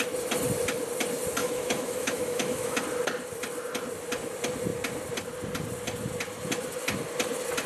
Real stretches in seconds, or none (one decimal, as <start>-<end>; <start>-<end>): 0.0-1.4; 2.8-7.7